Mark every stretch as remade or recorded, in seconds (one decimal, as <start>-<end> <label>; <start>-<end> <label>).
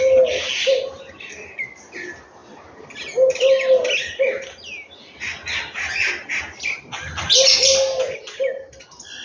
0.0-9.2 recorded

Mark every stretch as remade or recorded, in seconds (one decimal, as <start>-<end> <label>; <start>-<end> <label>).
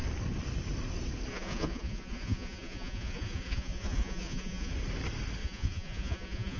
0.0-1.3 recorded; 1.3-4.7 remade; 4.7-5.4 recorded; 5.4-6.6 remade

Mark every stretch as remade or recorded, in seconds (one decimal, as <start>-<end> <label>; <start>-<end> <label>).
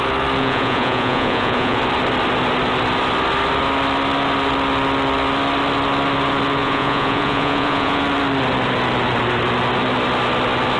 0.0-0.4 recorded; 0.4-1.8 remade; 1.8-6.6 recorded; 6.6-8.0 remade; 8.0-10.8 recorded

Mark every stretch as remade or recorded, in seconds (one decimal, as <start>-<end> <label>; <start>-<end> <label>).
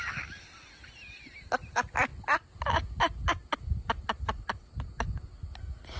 0.0-6.0 recorded